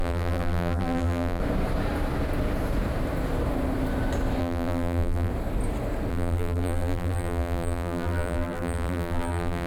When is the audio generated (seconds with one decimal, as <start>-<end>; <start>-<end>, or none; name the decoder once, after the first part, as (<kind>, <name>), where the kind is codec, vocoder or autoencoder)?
0.0-1.4 (vocoder, BigVGAN v2); 4.4-5.3; 6.1-9.7